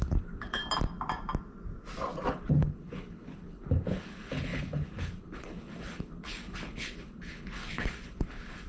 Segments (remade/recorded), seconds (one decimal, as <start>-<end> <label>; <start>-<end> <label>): 0.0-0.6 remade; 0.6-2.3 recorded; 2.3-8.7 remade